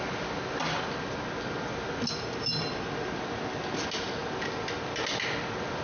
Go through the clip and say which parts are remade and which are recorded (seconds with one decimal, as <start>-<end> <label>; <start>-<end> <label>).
0.0-5.8 recorded